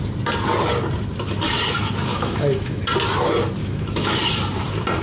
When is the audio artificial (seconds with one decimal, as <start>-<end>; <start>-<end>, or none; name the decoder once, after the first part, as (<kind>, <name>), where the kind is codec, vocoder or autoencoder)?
2.1-2.8 (autoencoder, DAC-VAE); 3.6-4.2